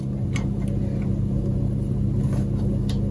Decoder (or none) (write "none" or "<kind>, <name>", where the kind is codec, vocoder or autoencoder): none